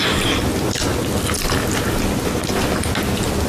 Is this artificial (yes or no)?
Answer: no